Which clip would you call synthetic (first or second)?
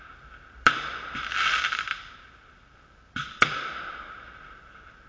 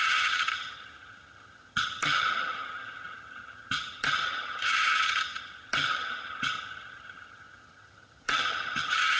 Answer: second